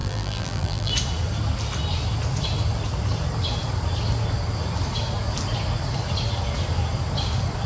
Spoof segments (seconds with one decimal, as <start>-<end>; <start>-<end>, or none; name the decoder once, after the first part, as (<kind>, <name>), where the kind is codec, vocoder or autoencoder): 0.0-0.9 (vocoder, BigVGAN v2)